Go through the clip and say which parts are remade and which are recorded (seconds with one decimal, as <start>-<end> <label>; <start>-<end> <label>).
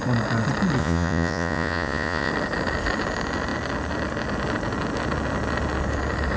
0.0-0.8 recorded; 0.8-2.3 remade; 2.3-6.4 recorded